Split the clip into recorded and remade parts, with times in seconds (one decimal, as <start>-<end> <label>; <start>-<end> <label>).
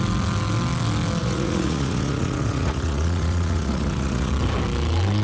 0.0-1.2 recorded; 1.2-4.3 remade; 4.3-5.2 recorded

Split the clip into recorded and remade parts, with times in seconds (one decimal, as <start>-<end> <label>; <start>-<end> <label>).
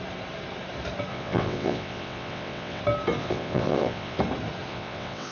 0.0-1.1 recorded; 1.1-2.8 remade; 2.8-3.2 recorded; 3.2-4.2 remade; 4.2-4.7 recorded; 4.7-5.3 remade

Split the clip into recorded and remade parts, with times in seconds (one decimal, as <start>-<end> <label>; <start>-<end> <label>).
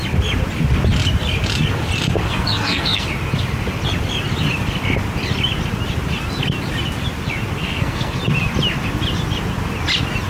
0.0-2.2 recorded; 2.2-3.1 remade; 3.1-7.6 recorded; 7.6-8.2 remade; 8.2-10.3 recorded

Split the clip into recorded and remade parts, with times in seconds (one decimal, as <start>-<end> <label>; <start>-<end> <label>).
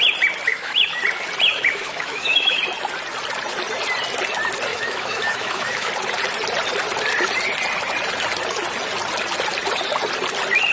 0.0-0.5 recorded; 0.5-1.0 remade; 1.0-1.5 recorded; 1.5-2.6 remade; 2.6-4.7 recorded; 4.7-5.9 remade; 5.9-10.7 recorded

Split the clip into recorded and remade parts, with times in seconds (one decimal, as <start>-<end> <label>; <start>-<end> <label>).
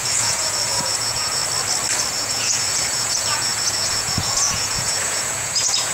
0.0-1.4 remade; 1.4-2.1 recorded; 2.1-5.9 remade